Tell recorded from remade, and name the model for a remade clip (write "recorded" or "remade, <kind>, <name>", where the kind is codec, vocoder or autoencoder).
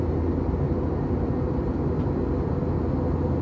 recorded